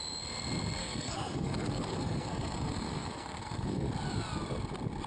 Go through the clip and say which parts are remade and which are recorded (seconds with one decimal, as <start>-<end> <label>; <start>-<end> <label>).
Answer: 0.0-0.8 recorded; 0.8-3.9 remade; 3.9-5.1 recorded